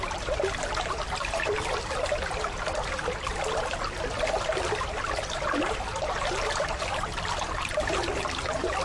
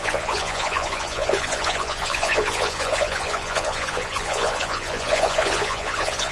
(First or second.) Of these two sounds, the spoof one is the second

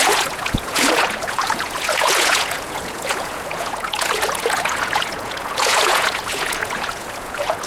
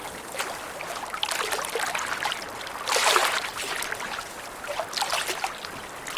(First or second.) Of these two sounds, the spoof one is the first